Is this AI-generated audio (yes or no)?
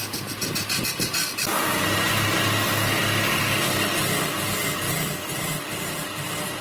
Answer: no